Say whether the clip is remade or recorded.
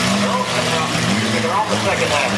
recorded